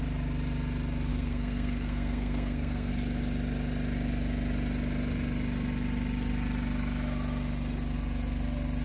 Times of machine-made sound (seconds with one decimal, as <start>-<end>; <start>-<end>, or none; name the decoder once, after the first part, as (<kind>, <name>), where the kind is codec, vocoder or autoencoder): 1.1-2.9 (codec, SNAC)